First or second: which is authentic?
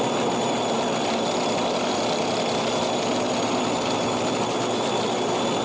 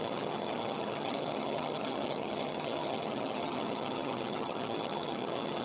first